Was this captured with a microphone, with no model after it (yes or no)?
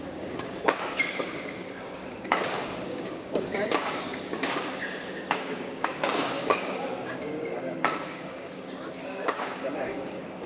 no